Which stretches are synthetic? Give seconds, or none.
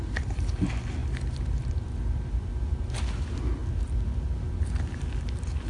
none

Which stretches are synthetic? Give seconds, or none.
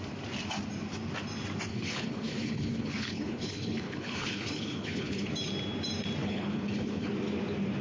1.7-5.3; 6.2-7.1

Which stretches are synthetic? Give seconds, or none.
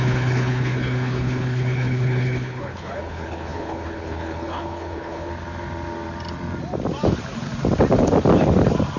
0.0-5.3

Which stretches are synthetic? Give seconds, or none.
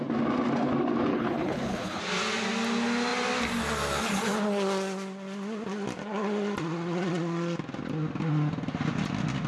1.1-2.0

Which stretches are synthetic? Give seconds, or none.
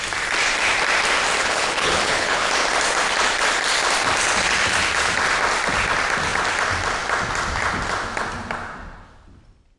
1.4-2.5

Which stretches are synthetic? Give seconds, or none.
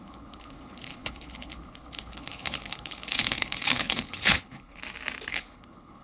0.0-4.8; 5.3-6.0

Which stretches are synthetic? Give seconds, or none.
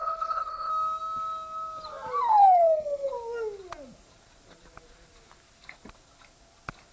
0.0-0.7; 2.4-3.1